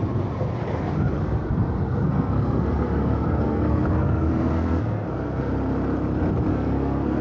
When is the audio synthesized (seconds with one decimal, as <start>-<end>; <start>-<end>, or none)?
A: 1.2-5.5; 6.5-7.2